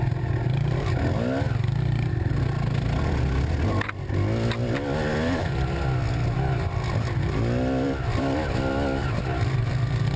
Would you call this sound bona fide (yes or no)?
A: yes